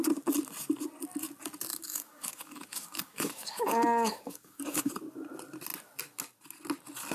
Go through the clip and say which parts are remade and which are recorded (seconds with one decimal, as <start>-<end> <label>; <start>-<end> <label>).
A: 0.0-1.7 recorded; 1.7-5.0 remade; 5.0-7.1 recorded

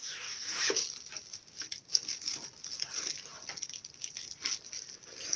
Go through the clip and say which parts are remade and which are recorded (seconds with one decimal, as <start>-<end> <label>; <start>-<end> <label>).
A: 0.0-0.6 remade; 0.6-5.4 recorded

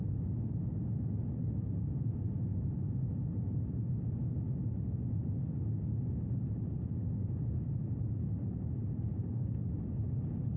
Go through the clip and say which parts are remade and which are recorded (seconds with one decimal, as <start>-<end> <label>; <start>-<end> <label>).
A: 0.0-8.8 recorded; 8.8-9.5 remade; 9.5-10.6 recorded

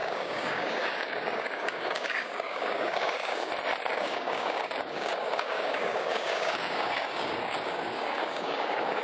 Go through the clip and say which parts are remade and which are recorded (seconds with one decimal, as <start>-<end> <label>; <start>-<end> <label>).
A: 0.0-3.5 remade; 3.5-3.9 recorded; 3.9-9.0 remade